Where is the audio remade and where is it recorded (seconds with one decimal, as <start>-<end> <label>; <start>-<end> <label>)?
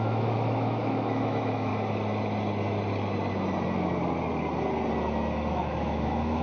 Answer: 0.0-1.7 remade; 1.7-5.5 recorded; 5.5-6.4 remade